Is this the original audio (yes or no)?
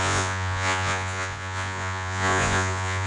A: no